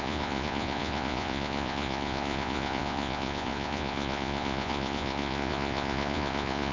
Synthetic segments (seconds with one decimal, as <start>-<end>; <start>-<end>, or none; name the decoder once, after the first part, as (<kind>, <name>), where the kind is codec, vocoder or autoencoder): 0.0-6.7 (vocoder, Vocos)